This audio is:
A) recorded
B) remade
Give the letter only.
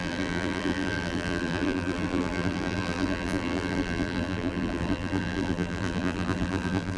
B